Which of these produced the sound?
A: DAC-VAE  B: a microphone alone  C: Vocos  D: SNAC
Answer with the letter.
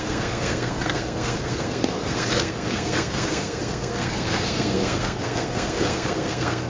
D